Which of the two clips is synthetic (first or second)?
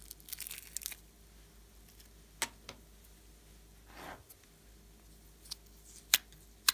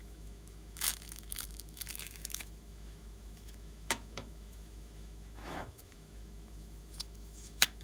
second